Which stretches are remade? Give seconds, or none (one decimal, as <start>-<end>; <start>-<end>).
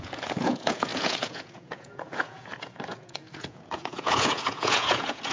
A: 0.0-5.3